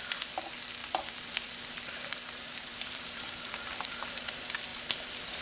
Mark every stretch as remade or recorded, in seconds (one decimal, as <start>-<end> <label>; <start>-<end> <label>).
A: 0.0-0.8 recorded; 0.8-4.0 remade; 4.0-4.7 recorded; 4.7-5.4 remade